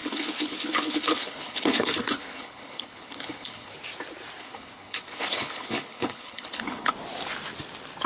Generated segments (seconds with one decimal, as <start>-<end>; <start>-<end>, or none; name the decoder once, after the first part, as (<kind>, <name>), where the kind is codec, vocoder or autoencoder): 0.0-3.7 (codec, HILCodec); 4.4-6.9